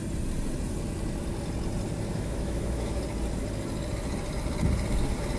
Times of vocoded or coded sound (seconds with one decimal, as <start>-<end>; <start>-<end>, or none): 2.1-3.0